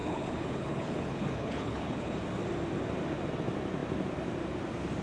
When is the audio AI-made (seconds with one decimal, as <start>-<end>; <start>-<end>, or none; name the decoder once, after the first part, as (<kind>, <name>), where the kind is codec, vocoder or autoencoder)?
0.0-2.1 (codec, HILCodec)